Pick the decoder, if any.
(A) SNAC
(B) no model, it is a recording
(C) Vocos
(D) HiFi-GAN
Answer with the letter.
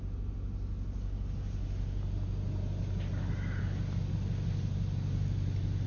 B